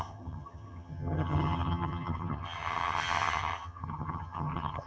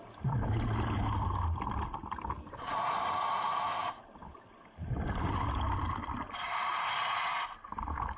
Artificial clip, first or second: first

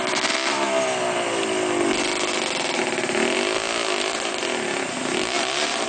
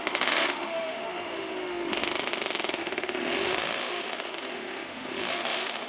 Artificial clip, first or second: second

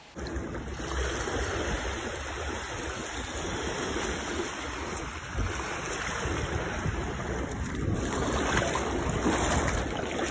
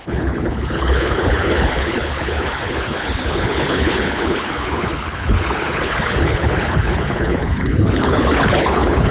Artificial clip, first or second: second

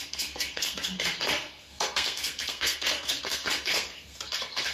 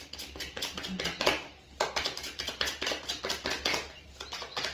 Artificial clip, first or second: first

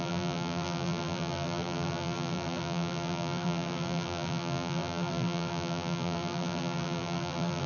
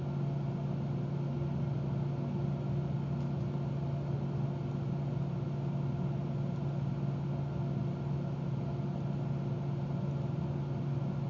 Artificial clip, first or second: first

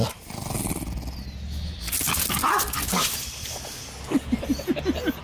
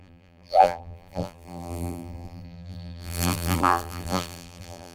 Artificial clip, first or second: second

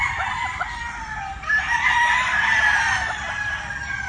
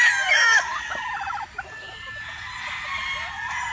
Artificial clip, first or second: first